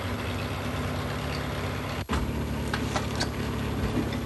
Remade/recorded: recorded